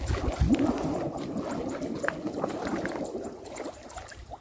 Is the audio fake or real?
real